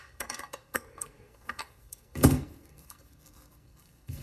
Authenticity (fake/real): fake